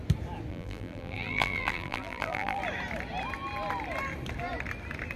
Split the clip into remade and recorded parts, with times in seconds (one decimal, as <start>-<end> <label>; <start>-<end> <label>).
0.0-0.5 recorded; 0.5-2.6 remade; 2.6-5.2 recorded